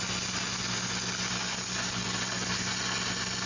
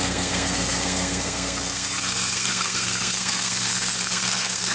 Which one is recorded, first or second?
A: first